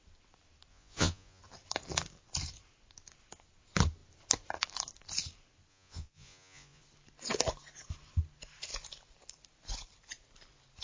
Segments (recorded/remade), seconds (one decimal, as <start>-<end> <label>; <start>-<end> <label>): 0.0-0.7 recorded; 0.7-1.4 remade; 1.4-5.7 recorded; 5.7-6.8 remade; 6.8-10.8 recorded